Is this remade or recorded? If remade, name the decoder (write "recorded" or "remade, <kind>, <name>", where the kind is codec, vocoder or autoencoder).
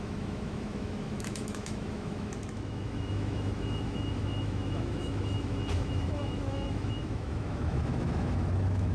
remade, autoencoder, DAC-VAE